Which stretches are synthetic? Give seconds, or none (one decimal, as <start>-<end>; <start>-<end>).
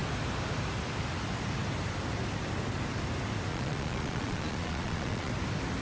3.5-5.3